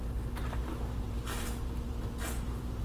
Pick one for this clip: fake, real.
fake